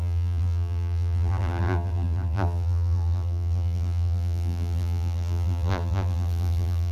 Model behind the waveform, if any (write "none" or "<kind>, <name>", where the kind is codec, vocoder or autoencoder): vocoder, BigVGAN v2